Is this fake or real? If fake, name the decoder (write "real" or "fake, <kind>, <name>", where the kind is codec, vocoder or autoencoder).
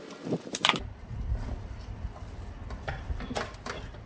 real